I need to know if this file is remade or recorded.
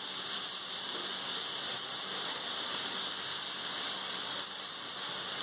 recorded